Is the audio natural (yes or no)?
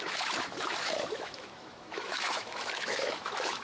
no